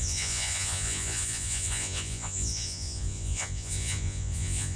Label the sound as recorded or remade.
remade